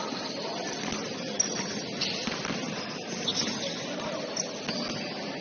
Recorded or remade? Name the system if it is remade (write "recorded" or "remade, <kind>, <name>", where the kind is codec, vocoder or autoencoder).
recorded